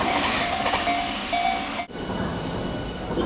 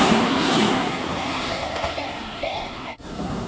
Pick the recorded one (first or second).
first